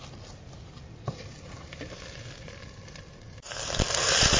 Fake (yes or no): yes